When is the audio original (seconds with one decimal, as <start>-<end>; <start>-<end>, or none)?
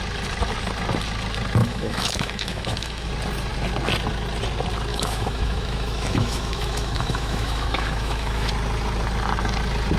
0.0-1.6; 3.1-4.9; 8.5-10.0